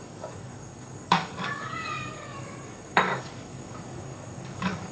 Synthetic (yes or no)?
yes